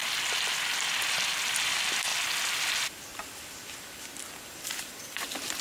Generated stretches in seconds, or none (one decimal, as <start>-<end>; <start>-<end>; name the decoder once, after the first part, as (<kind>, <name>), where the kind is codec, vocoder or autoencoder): none